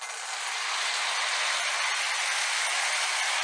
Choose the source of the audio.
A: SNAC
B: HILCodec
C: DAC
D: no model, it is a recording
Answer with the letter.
D